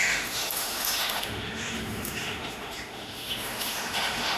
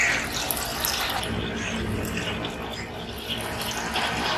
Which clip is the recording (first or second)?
second